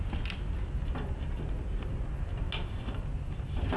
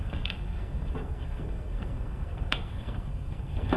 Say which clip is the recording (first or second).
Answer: first